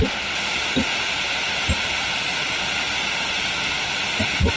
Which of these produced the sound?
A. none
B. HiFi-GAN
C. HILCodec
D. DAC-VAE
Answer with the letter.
A